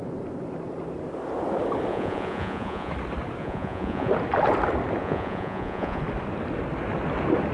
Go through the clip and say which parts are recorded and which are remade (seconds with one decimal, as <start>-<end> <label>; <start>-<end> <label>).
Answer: 0.0-1.9 recorded; 1.9-2.9 remade; 2.9-3.4 recorded; 3.4-4.1 remade; 4.1-5.0 recorded; 5.0-6.0 remade; 6.0-7.5 recorded